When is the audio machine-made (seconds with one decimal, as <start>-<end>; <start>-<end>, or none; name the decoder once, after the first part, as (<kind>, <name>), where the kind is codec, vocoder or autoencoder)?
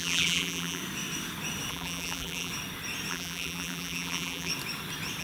0.0-0.8 (vocoder, BigVGAN v2); 1.7-2.5; 3.1-4.5